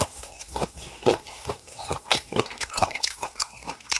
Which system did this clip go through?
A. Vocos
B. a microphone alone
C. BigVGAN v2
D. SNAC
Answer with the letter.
D